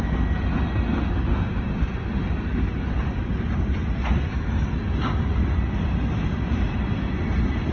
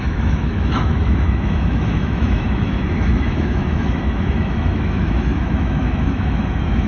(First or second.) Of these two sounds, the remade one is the second